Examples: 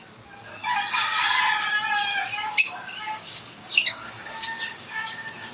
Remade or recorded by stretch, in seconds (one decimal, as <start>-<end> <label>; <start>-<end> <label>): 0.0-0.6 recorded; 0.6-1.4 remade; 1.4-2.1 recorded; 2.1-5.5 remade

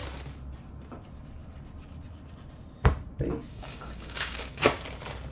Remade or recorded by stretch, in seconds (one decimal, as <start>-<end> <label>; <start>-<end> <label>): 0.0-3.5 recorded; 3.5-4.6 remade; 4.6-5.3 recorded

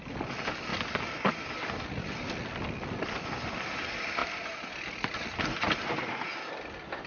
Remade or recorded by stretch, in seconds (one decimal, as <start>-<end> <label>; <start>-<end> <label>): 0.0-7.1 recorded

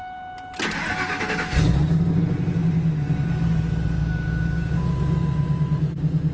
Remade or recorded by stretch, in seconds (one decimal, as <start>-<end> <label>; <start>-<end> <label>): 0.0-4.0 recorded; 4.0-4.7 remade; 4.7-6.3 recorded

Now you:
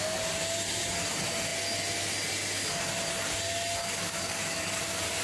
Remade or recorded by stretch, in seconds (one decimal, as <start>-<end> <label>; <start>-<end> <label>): 0.0-3.8 recorded; 3.8-4.8 remade; 4.8-5.2 recorded

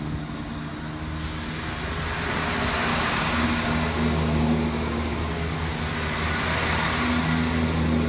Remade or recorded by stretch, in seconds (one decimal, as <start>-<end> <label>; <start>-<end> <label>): 0.0-2.9 recorded; 2.9-5.8 remade; 5.8-8.1 recorded